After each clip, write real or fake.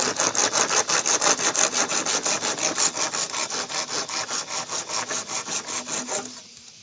real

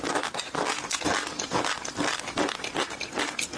real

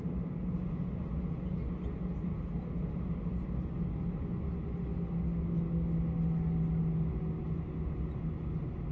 real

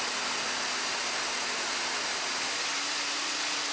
real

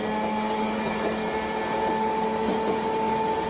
real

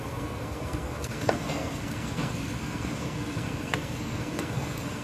fake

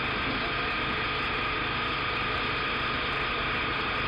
real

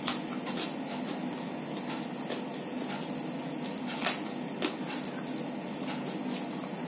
real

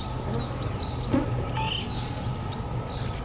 real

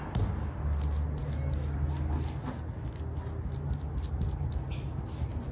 real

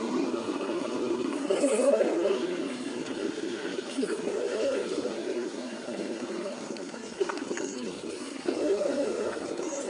fake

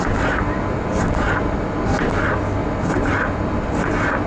real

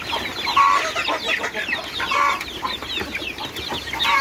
real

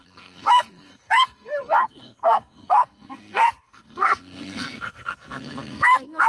fake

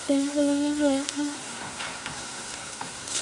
fake